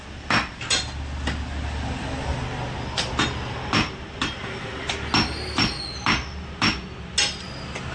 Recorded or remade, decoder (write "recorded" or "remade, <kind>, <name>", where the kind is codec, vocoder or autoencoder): recorded